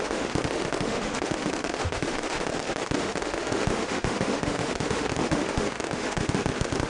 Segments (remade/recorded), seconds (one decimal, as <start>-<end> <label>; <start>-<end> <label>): 0.0-2.5 remade; 2.5-3.0 recorded; 3.0-6.9 remade